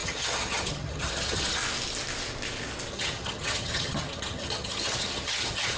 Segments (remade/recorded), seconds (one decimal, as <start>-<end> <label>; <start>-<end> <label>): 0.0-1.6 remade; 1.6-2.9 recorded; 2.9-5.8 remade